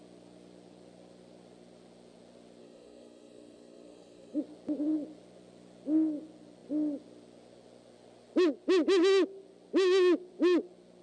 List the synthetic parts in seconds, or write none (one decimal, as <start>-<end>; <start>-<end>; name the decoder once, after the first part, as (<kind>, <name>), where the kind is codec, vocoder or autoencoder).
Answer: 2.6-4.4 (codec, SNAC)